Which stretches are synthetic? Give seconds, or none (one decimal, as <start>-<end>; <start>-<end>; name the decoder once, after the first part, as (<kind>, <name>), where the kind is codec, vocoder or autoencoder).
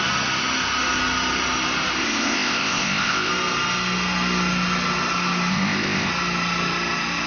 2.0-3.3 (codec, ZipCodec); 5.5-6.1